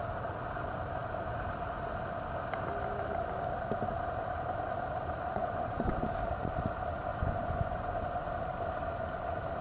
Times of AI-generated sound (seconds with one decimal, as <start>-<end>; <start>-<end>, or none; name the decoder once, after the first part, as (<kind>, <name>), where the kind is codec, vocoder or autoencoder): 5.3-5.9 (vocoder, Vocos); 7.1-8.3